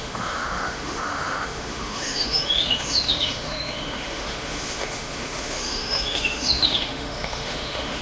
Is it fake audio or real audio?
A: fake